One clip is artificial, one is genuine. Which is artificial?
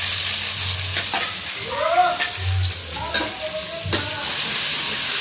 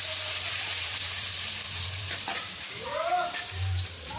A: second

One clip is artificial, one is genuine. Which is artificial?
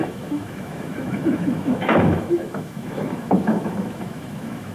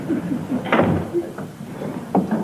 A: first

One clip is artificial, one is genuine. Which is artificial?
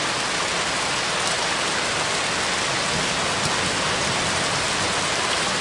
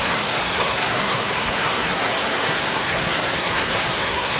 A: second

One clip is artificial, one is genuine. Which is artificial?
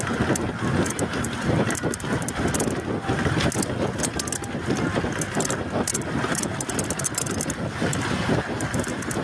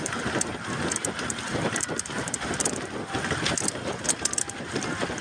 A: second